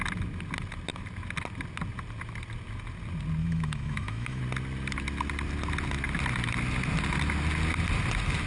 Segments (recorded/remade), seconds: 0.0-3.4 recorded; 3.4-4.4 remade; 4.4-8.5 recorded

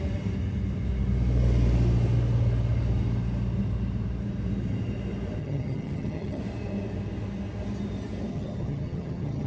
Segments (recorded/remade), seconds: 0.0-5.4 recorded; 5.4-6.4 remade; 6.4-8.3 recorded; 8.3-9.5 remade

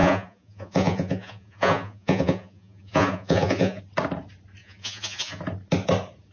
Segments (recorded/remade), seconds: 0.0-3.8 remade; 3.8-4.6 recorded; 4.6-5.4 remade; 5.4-6.3 recorded

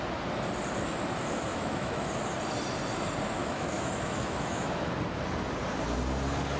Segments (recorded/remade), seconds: 0.0-1.5 recorded; 1.5-2.1 remade; 2.1-3.4 recorded; 3.4-4.9 remade; 4.9-6.6 recorded